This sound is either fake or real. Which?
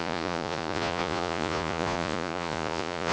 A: fake